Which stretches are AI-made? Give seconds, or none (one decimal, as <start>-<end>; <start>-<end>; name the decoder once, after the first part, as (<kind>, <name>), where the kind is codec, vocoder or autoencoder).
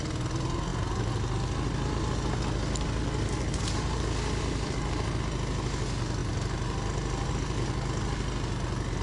none